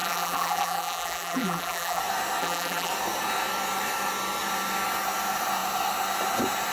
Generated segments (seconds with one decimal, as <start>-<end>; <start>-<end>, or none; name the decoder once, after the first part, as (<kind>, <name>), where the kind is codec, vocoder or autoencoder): 0.0-2.0 (vocoder, BigVGAN v2); 2.4-2.9